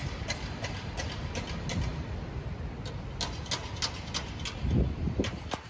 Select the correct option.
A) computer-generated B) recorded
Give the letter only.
B